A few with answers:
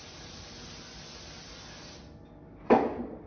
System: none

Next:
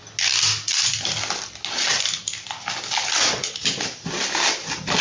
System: none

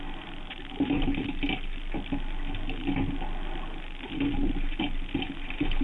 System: none